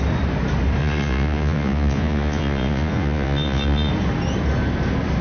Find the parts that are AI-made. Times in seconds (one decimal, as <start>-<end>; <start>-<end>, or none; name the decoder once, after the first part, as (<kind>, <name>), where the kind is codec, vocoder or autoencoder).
0.8-3.9 (vocoder, Vocos)